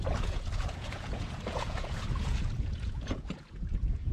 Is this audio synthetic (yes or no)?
yes